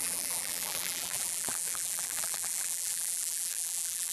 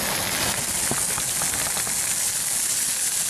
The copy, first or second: first